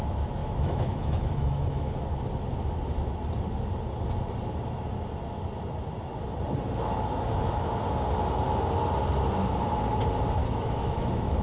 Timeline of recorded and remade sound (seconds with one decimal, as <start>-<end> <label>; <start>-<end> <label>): 0.0-0.4 recorded; 0.4-2.0 remade; 2.0-10.4 recorded; 10.4-11.4 remade